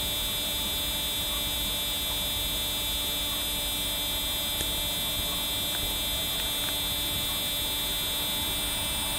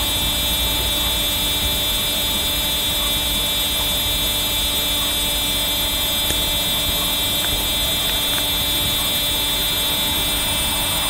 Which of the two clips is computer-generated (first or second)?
second